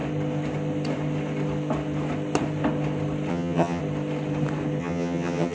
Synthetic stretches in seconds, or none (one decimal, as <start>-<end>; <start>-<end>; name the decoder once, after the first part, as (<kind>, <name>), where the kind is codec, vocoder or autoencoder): 3.3-3.8 (vocoder, HiFi-GAN); 4.8-5.5